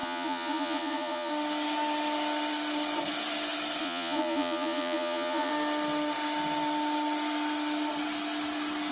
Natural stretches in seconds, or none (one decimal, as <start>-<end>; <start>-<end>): 1.3-3.8; 5.5-8.9